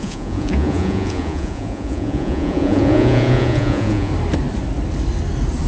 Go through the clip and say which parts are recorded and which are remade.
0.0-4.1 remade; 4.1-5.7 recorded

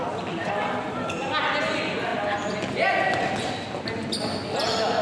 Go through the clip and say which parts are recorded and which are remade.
0.0-5.0 recorded

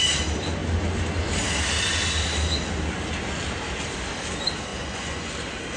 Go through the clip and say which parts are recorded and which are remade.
0.0-4.7 recorded; 4.7-5.3 remade; 5.3-5.8 recorded

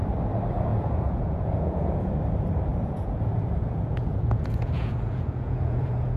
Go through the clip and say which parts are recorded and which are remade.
0.0-0.7 recorded; 0.7-2.1 remade; 2.1-2.7 recorded; 2.7-6.2 remade

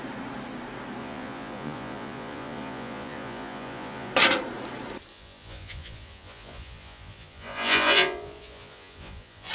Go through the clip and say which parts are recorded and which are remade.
0.0-1.0 recorded; 1.0-4.1 remade; 4.1-5.1 recorded; 5.1-9.5 remade

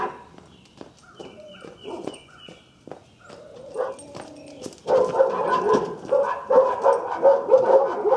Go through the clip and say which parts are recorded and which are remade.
0.0-1.2 recorded; 1.2-2.6 remade; 2.6-8.2 recorded

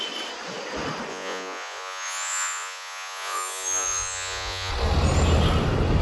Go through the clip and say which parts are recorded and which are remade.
0.0-1.1 recorded; 1.1-4.7 remade; 4.7-6.0 recorded

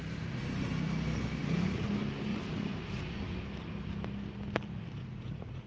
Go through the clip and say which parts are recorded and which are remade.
0.0-1.4 recorded; 1.4-1.9 remade; 1.9-2.3 recorded; 2.3-3.4 remade; 3.4-5.0 recorded; 5.0-5.7 remade